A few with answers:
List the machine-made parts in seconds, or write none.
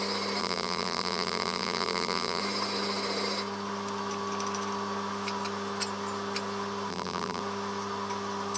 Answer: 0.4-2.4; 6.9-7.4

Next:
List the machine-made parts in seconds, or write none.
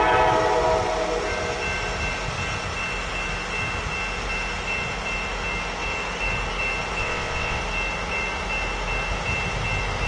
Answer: 7.0-7.6